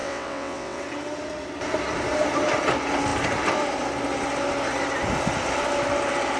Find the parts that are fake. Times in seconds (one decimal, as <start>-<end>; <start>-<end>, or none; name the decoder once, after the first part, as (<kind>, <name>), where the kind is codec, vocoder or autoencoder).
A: 0.0-0.8 (vocoder, WaveNeXt)